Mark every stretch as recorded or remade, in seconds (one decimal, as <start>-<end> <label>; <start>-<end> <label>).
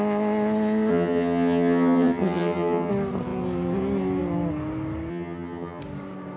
0.0-0.9 recorded; 0.9-2.9 remade; 2.9-5.1 recorded; 5.1-5.8 remade; 5.8-6.4 recorded